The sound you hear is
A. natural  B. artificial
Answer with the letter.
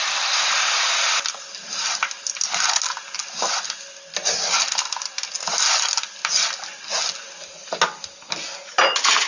A